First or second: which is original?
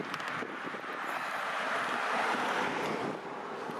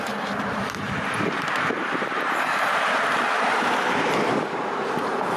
first